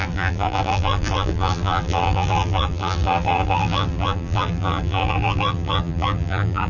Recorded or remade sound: remade